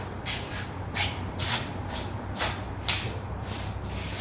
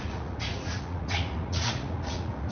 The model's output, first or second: second